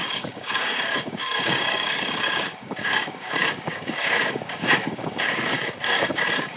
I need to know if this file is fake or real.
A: fake